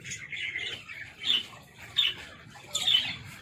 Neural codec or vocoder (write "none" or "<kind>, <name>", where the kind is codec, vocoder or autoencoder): vocoder, BigVGAN v2